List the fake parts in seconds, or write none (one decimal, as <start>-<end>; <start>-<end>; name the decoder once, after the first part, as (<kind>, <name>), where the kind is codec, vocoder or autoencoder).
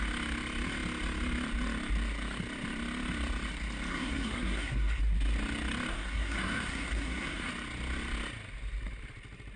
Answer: 3.9-5.0 (codec, SNAC); 5.9-7.5